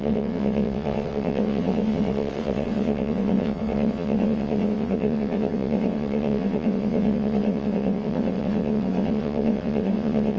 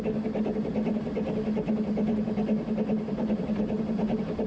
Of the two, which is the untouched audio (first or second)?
second